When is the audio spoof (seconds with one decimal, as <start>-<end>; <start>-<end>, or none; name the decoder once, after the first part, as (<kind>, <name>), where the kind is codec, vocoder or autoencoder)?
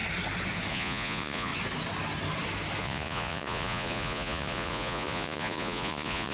0.7-1.5 (vocoder, Vocos); 2.8-6.3